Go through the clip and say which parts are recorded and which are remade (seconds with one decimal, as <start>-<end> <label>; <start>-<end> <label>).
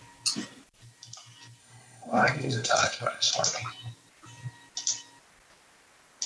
0.0-1.6 recorded; 1.6-3.3 remade; 3.3-6.3 recorded